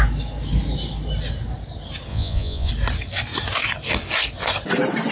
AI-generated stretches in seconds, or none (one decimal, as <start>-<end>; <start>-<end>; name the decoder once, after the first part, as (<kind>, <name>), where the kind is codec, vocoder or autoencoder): 2.1-2.7 (vocoder, Vocos)